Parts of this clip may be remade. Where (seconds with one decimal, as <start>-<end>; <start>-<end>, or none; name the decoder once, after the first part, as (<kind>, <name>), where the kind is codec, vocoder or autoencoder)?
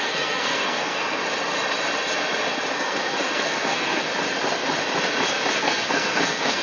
0.0-1.2 (codec, SNAC); 2.7-4.1; 5.6-6.6